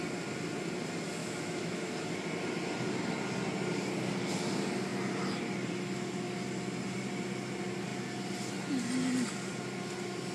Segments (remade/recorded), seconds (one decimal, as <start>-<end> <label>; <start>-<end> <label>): 0.0-1.2 recorded; 1.2-1.9 remade; 1.9-10.3 recorded